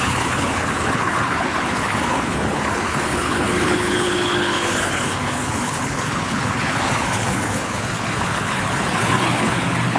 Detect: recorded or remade remade